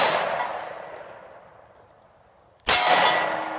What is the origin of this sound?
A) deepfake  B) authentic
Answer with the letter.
B